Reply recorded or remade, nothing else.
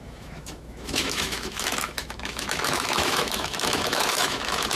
remade